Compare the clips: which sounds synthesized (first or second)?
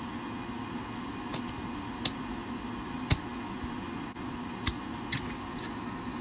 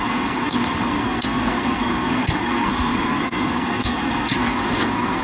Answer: second